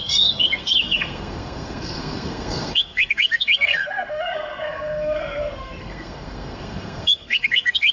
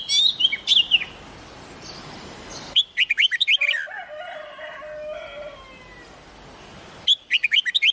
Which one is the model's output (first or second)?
first